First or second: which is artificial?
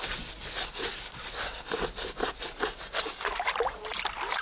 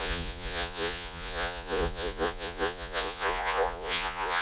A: second